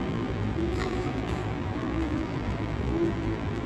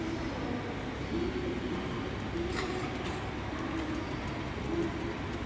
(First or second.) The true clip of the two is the second